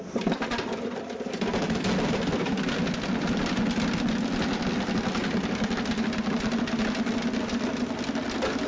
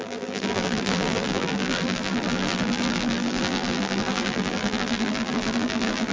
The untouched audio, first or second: first